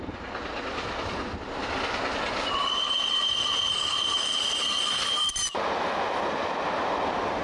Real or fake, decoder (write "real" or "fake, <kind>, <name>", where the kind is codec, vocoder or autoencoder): real